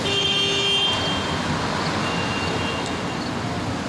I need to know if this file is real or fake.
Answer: real